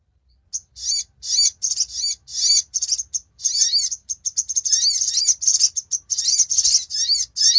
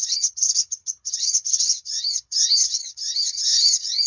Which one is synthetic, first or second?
second